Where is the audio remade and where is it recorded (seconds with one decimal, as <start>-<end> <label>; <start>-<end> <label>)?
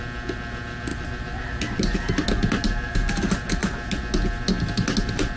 0.0-0.9 recorded; 0.9-1.5 remade; 1.5-5.4 recorded